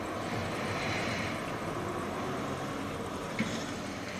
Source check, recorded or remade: recorded